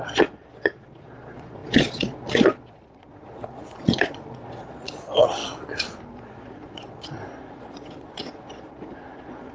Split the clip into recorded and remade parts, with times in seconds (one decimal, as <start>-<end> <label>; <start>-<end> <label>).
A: 0.0-5.4 remade; 5.4-6.2 recorded; 6.2-9.5 remade